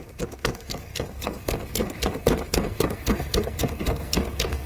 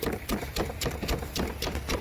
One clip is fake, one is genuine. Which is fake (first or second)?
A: first